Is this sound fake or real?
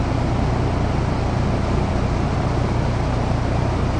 real